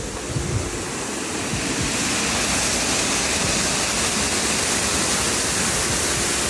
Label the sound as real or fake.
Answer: real